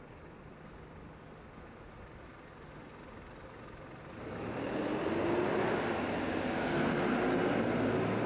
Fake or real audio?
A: real